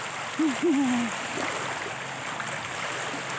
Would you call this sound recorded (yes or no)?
yes